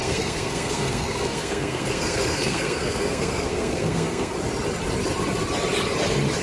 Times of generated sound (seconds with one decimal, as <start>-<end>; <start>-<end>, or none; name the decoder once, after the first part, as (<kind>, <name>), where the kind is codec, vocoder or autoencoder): 0.0-4.3 (codec, SNAC)